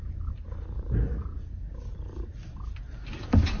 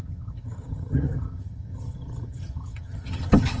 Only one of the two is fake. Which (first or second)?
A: second